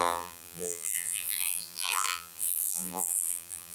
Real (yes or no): no